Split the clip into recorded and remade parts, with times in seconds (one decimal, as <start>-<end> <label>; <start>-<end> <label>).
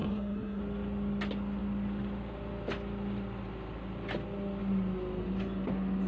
0.0-0.6 remade; 0.6-6.1 recorded